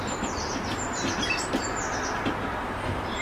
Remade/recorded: remade